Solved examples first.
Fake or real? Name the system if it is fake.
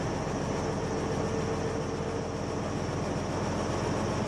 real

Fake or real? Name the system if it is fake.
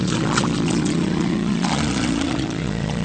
fake, vocoder, Vocos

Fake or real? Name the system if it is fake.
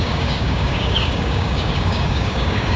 fake, codec, DAC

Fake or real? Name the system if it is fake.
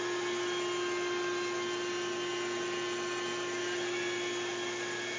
real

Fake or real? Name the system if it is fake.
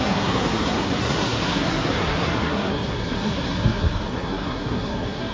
fake, codec, SNAC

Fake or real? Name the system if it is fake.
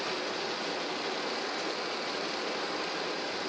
real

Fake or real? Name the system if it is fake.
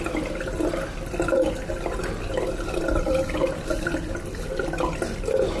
real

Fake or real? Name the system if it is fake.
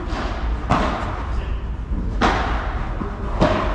real